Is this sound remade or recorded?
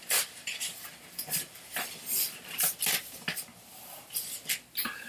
recorded